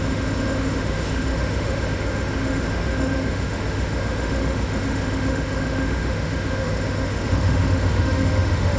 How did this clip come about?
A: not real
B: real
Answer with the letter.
A